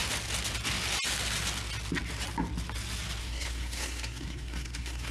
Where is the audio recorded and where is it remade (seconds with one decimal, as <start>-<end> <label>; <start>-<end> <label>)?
0.0-3.2 recorded; 3.2-5.1 remade